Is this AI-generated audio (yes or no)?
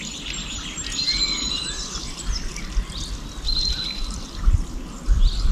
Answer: no